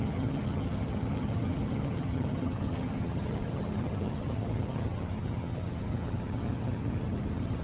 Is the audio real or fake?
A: fake